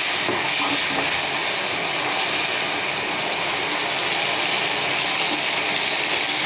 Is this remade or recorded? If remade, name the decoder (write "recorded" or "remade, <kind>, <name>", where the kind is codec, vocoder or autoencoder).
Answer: recorded